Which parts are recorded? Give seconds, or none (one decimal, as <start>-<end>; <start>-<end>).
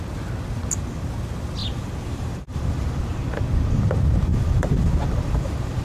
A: 0.0-1.6; 3.4-4.3